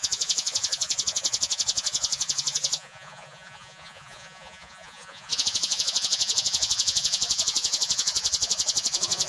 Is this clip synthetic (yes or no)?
yes